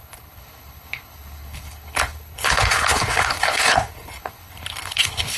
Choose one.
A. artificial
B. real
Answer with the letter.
A